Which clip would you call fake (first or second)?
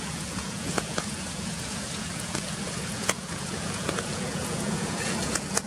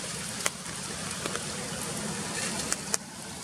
first